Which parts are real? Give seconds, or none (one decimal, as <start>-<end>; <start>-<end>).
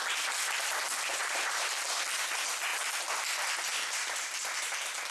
0.0-1.2; 1.8-5.1